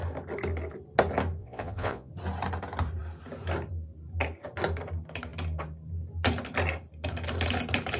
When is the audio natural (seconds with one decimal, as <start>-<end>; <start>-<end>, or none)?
0.0-1.4; 2.1-8.0